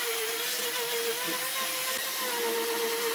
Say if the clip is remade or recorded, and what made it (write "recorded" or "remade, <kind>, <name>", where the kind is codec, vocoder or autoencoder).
recorded